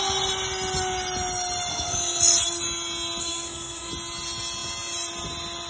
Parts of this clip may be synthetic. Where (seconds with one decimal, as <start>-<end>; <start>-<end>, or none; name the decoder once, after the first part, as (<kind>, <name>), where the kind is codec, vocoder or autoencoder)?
1.7-2.2 (codec, SNAC); 3.2-3.9